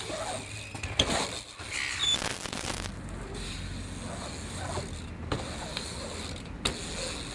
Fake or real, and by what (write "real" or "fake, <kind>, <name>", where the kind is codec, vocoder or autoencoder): real